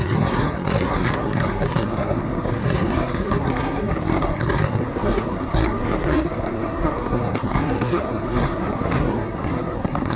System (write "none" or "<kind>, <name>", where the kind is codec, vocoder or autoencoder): codec, SNAC